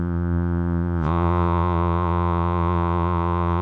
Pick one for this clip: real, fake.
fake